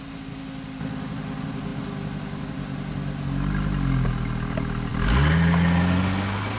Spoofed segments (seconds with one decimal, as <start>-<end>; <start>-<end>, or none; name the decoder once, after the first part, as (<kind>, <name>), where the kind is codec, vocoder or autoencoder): none

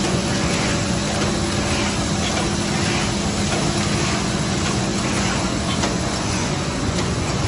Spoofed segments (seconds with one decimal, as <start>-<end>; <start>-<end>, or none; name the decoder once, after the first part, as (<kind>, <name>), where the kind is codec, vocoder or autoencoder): 0.0-1.0 (vocoder, Vocos); 4.0-7.5

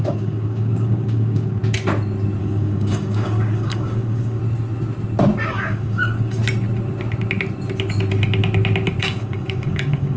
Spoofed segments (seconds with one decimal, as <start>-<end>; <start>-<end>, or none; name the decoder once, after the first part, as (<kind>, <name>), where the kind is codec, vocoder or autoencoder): 0.0-1.6 (codec, DAC); 2.4-4.4; 5.5-6.4; 9.0-10.2

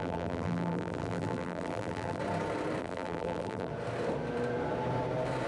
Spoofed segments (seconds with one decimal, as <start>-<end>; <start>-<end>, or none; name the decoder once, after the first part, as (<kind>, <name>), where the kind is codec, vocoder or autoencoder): 0.0-2.2 (vocoder, BigVGAN v2); 2.8-3.7